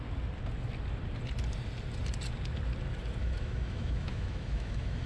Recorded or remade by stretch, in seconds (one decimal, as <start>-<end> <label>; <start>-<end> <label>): 0.0-3.2 recorded; 3.2-5.1 remade